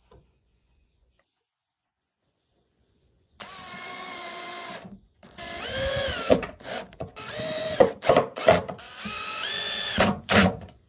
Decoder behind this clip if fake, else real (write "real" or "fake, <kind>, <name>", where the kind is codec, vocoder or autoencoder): fake, vocoder, Vocos